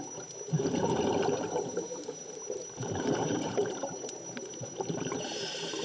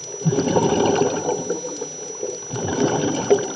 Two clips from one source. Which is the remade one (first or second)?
first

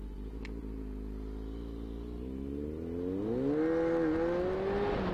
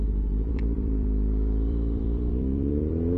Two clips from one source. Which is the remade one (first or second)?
second